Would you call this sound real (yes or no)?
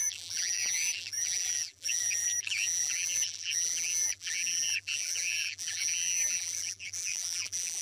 no